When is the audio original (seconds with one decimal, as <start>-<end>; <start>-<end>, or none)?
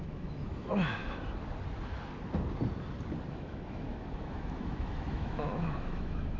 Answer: 1.0-3.3